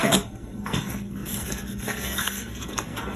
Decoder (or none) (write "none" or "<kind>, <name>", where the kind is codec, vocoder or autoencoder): codec, SNAC